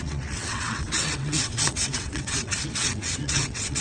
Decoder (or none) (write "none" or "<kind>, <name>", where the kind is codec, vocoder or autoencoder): vocoder, WaveNeXt